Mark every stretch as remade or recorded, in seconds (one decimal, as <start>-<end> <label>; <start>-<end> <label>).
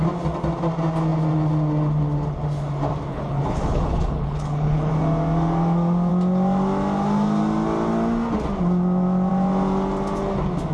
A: 0.0-3.1 recorded; 3.1-4.9 remade; 4.9-10.7 recorded